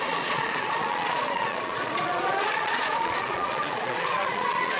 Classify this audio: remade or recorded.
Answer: remade